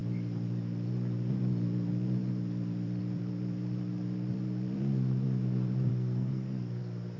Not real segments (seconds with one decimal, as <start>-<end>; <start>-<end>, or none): 5.9-6.8